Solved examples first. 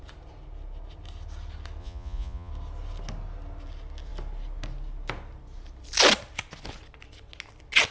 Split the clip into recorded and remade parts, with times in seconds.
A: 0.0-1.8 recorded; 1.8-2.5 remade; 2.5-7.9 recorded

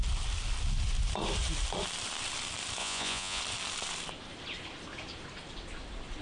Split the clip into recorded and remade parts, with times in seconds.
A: 0.0-2.8 recorded; 2.8-3.4 remade; 3.4-6.2 recorded